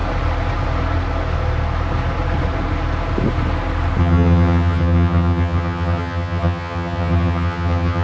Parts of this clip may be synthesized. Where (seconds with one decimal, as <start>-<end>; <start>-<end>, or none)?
4.0-8.0